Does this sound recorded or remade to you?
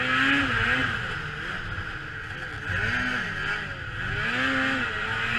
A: recorded